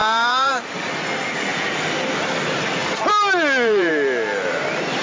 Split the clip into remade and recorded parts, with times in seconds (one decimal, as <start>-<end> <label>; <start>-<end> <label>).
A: 0.0-0.7 remade; 0.7-2.8 recorded; 2.8-3.9 remade; 3.9-5.0 recorded